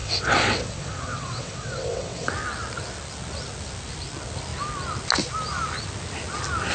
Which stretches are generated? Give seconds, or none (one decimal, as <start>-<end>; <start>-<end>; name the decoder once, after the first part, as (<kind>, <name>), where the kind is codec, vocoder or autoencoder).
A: 0.0-2.3 (vocoder, WaveNeXt)